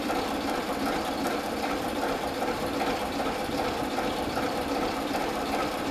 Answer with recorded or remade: remade